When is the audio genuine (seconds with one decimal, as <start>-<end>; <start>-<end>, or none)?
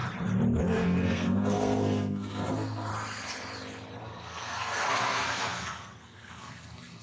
0.0-0.6; 2.9-4.0